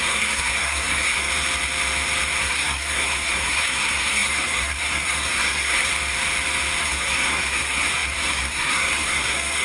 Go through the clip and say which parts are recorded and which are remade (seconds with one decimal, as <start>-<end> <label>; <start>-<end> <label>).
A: 0.0-1.3 remade; 1.3-2.4 recorded; 2.4-5.9 remade; 5.9-6.8 recorded; 6.8-9.6 remade